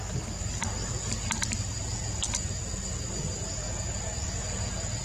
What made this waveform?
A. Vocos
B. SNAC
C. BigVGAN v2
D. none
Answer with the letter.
D